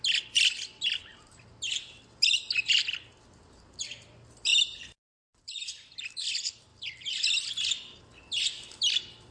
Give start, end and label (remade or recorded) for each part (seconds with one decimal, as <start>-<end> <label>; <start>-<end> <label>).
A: 0.0-4.5 recorded; 4.5-6.3 remade; 6.3-9.3 recorded